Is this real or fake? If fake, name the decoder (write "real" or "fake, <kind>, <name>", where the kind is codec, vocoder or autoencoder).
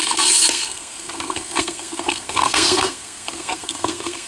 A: fake, codec, SNAC